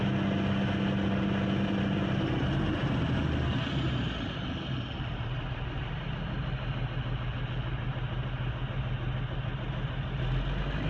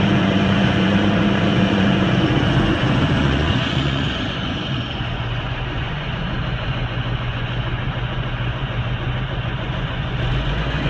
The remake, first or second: second